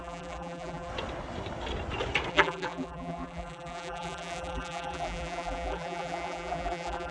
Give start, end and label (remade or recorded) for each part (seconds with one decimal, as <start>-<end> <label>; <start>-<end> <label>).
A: 0.0-0.9 remade; 0.9-2.3 recorded; 2.3-7.1 remade